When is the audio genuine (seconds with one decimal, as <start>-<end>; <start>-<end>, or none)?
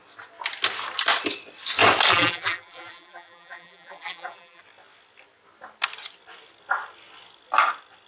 0.0-2.1; 4.6-8.1